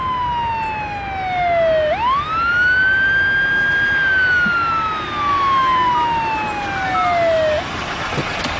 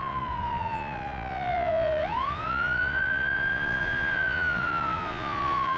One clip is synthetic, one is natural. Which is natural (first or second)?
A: first